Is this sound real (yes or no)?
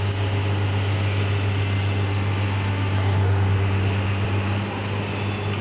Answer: yes